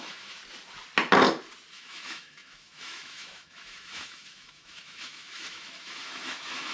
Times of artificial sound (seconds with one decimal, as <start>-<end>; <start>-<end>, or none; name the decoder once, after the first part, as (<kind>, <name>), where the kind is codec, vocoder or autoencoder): 0.0-0.4 (autoencoder, DAC-VAE); 1.7-6.7